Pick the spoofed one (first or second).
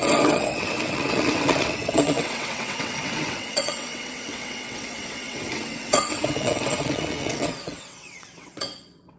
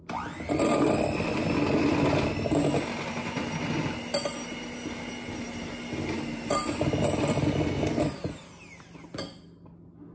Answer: first